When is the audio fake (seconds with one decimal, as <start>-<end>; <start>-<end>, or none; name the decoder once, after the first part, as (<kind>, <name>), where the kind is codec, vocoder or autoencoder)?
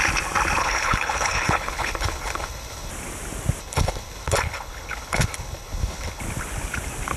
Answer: 0.6-2.9 (codec, HILCodec); 3.6-6.2